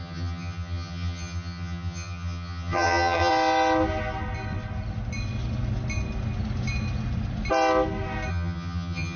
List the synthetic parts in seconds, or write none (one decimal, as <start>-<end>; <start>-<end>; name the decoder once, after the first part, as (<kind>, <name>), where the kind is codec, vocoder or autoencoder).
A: 0.0-3.3 (vocoder, HiFi-GAN); 8.3-9.2